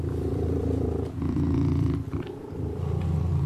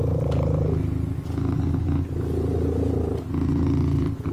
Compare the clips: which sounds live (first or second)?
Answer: second